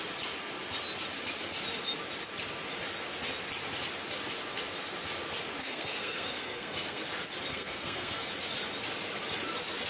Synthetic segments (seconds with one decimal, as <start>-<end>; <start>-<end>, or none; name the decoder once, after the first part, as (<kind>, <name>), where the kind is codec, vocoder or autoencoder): 5.6-7.1 (codec, SNAC); 7.5-8.3